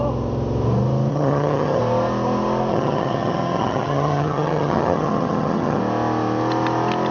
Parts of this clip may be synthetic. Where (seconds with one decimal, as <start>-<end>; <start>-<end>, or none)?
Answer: 1.1-1.8; 2.7-5.8